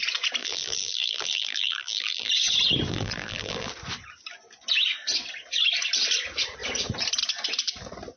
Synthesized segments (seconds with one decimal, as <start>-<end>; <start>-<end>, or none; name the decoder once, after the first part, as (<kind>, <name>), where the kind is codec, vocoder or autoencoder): 0.4-2.3 (vocoder, BigVGAN v2); 2.9-3.7